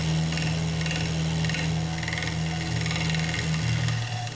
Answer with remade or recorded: recorded